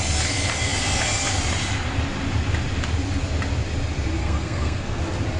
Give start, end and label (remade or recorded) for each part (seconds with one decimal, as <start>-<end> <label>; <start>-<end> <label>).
0.0-4.2 recorded; 4.2-5.0 remade; 5.0-5.4 recorded